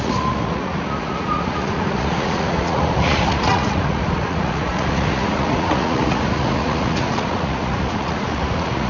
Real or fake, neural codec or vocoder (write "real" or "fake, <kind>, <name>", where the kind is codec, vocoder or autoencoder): fake, vocoder, Vocos